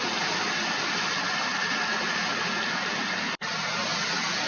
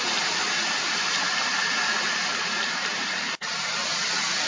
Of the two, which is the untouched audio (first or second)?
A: first